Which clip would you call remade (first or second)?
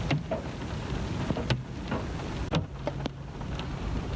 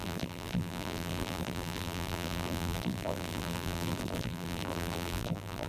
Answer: second